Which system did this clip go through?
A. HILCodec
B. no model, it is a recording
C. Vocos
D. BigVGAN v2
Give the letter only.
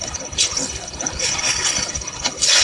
A